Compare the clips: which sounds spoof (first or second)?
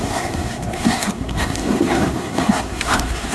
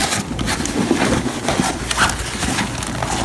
first